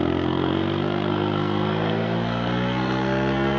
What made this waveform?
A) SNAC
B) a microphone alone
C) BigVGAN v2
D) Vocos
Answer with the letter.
A